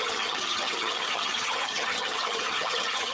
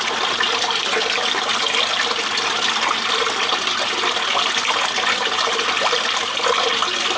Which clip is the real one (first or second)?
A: second